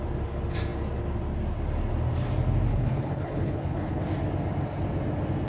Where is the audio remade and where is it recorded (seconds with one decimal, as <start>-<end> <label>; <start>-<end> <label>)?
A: 0.0-2.7 recorded; 2.7-4.0 remade; 4.0-5.5 recorded